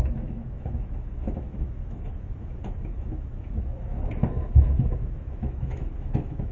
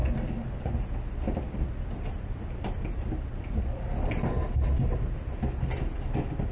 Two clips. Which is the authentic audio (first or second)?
second